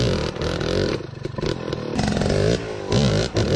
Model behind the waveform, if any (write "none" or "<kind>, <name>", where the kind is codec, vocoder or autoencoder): none